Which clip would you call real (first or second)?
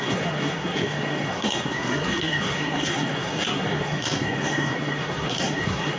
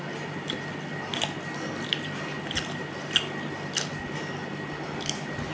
second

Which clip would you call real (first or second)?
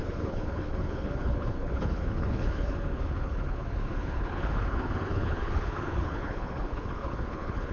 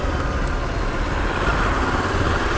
second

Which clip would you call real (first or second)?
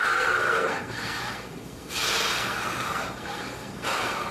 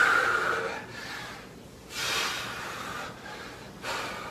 second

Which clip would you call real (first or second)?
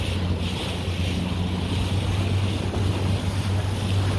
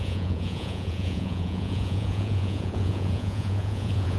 first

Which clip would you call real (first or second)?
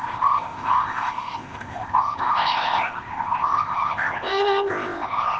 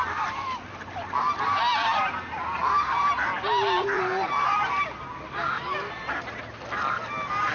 second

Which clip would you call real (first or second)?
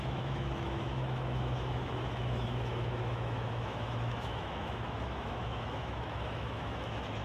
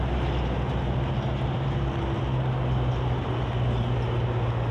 second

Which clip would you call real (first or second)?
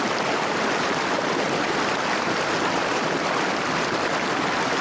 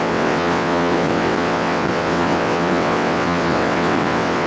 first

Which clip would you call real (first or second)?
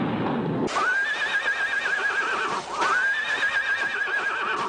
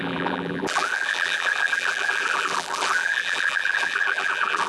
first